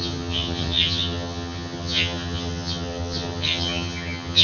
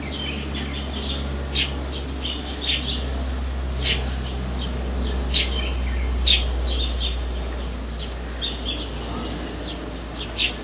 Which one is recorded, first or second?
second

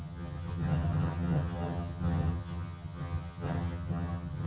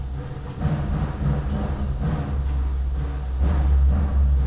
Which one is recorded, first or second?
second